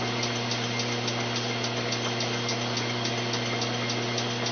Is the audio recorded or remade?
recorded